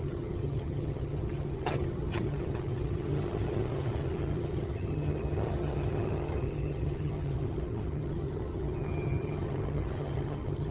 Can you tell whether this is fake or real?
fake